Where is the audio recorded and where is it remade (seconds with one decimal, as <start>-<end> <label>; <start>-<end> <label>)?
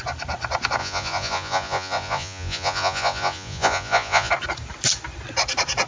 0.0-0.8 recorded; 0.8-4.3 remade; 4.3-5.9 recorded